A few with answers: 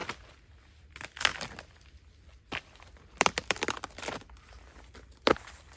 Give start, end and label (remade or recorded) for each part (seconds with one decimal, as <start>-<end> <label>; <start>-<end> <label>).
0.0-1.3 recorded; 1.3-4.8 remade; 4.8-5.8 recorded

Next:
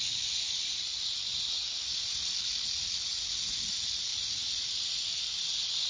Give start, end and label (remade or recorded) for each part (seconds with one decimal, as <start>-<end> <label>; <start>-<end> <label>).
0.0-1.3 recorded; 1.3-2.5 remade; 2.5-4.1 recorded; 4.1-5.2 remade; 5.2-5.9 recorded

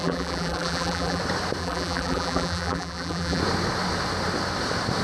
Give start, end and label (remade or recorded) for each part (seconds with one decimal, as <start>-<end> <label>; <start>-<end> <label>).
0.0-1.2 remade; 1.2-1.6 recorded; 1.6-3.4 remade; 3.4-5.0 recorded

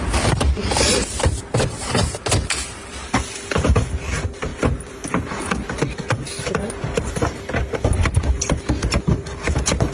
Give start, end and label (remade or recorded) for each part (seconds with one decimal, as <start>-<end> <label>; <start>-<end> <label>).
0.0-9.9 recorded

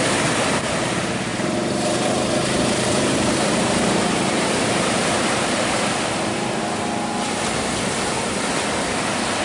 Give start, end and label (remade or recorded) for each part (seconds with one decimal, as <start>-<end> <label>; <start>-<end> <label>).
0.0-1.3 recorded; 1.3-6.6 remade; 6.6-9.4 recorded